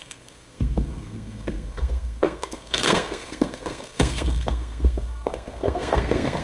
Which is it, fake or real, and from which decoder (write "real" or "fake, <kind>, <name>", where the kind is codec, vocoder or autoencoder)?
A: fake, codec, SNAC